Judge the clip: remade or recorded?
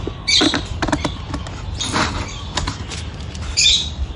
recorded